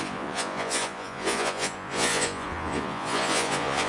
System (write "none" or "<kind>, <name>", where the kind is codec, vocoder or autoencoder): vocoder, Vocos